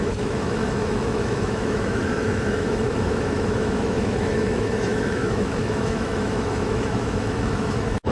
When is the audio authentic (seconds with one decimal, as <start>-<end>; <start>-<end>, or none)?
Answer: none